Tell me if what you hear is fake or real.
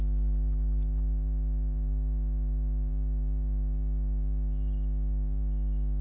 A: fake